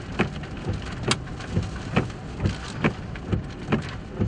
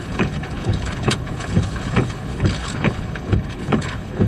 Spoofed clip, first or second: second